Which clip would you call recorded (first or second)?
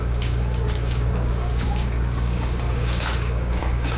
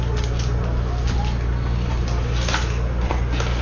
second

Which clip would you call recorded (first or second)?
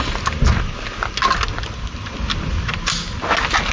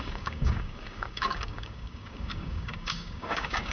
first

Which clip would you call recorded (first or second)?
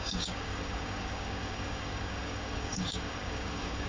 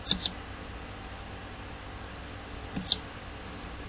second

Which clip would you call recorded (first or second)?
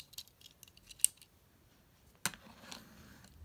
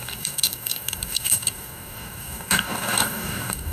first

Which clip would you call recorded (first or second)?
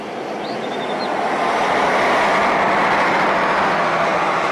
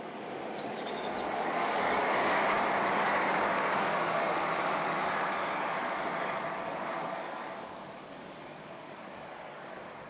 first